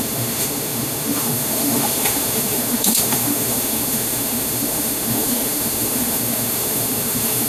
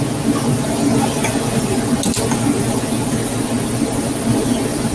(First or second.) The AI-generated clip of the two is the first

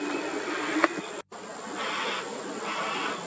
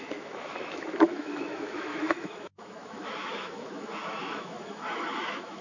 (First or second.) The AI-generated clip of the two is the second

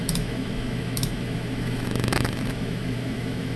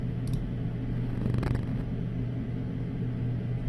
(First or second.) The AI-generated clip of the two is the first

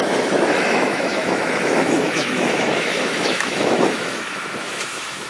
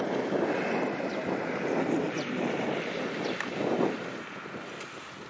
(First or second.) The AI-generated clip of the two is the first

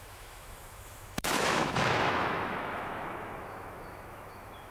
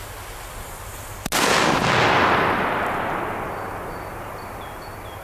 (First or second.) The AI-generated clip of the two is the first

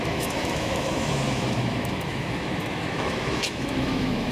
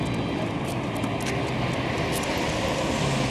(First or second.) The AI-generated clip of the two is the first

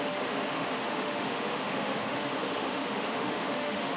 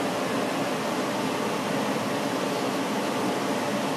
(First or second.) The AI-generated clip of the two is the first